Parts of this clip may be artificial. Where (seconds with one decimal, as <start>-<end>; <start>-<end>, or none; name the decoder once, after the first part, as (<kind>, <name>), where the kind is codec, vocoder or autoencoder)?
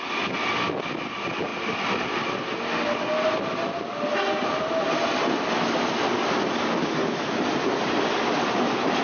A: none